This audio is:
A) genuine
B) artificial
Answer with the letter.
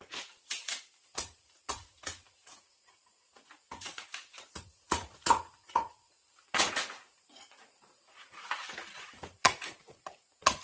B